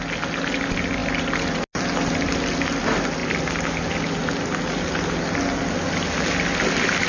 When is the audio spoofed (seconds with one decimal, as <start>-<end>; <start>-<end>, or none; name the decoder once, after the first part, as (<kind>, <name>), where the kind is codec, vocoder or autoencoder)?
none